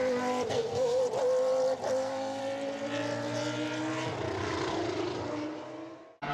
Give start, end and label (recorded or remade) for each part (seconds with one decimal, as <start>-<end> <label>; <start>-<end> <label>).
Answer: 0.0-0.5 recorded; 0.5-1.0 remade; 1.0-2.0 recorded; 2.0-2.4 remade; 2.4-6.3 recorded